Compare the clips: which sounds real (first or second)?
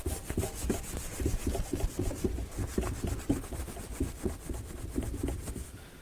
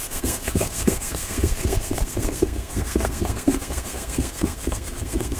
first